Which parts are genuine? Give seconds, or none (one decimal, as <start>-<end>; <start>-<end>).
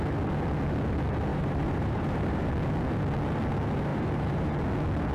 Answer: 0.0-1.3; 2.5-3.9; 4.5-5.1